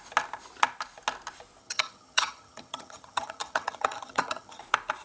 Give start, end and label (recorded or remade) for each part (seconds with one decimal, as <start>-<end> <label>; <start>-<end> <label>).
0.0-1.6 recorded; 1.6-4.6 remade; 4.6-5.0 recorded

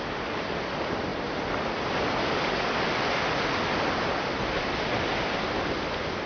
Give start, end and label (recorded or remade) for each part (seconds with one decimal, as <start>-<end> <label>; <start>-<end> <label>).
0.0-6.3 recorded

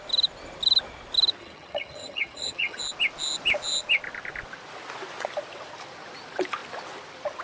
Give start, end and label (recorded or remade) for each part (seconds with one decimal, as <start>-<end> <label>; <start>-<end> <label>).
0.0-1.4 recorded; 1.4-2.8 remade; 2.8-7.4 recorded